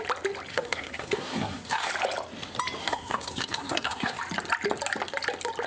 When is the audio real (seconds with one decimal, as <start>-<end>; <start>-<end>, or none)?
0.0-0.5; 1.9-2.8; 4.2-5.7